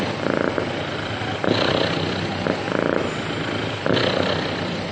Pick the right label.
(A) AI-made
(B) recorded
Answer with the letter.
B